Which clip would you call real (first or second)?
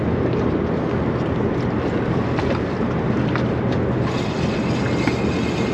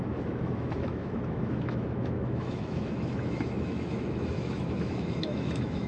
first